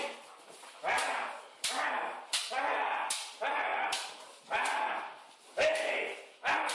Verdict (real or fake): real